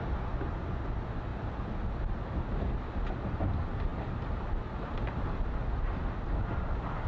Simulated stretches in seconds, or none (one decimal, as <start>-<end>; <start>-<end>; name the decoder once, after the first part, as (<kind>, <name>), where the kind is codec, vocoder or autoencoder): 3.9-5.0 (vocoder, BigVGAN v2)